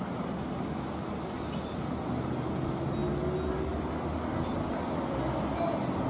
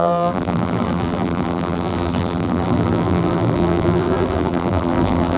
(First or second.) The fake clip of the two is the second